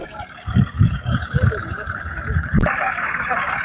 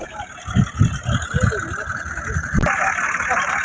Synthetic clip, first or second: first